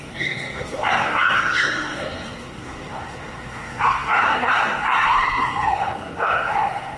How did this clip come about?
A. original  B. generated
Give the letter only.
B